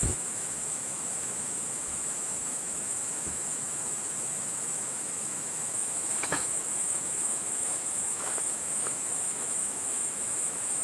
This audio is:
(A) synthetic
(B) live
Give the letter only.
A